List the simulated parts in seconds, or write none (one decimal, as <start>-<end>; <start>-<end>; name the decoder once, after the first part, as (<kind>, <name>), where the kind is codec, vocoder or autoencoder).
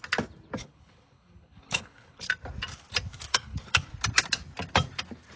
0.6-2.3 (codec, HILCodec); 3.3-3.9